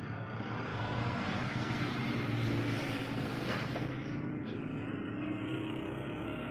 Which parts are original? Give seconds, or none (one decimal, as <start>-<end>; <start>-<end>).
1.9-2.8